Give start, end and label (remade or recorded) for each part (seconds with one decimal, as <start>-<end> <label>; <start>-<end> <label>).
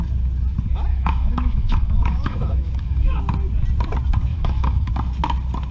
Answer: 0.0-0.9 recorded; 0.9-3.2 remade; 3.2-4.3 recorded; 4.3-4.9 remade; 4.9-5.7 recorded